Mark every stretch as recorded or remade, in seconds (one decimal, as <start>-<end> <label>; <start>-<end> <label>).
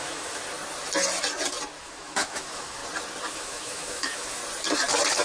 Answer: 0.0-0.4 remade; 0.4-1.8 recorded; 1.8-2.8 remade; 2.8-3.3 recorded; 3.3-4.4 remade; 4.4-5.2 recorded